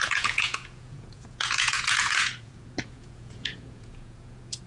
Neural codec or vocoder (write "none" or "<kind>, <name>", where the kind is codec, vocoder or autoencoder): vocoder, Vocos